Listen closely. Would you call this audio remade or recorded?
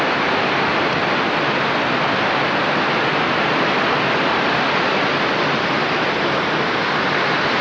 remade